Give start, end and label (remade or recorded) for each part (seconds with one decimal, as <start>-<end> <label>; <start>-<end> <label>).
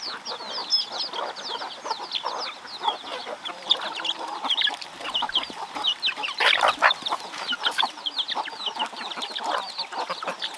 0.0-3.1 recorded; 3.1-8.0 remade; 8.0-10.6 recorded